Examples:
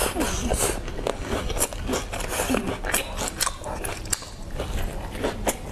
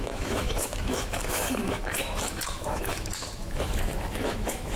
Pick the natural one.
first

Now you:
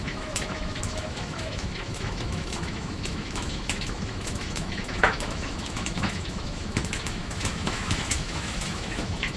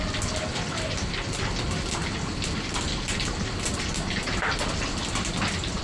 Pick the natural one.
second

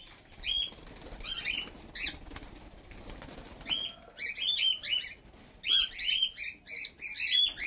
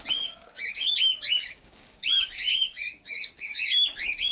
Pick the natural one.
first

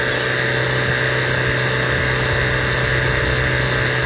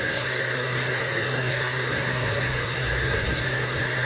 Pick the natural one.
first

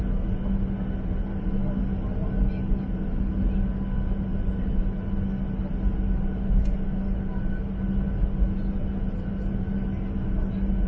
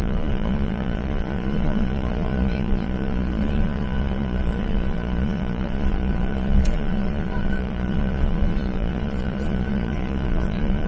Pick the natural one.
first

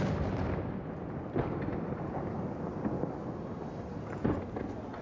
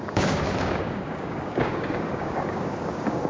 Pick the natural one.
first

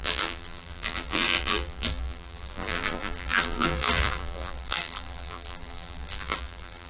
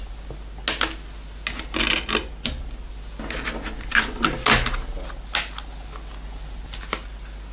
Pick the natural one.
second